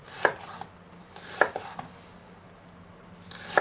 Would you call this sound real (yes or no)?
yes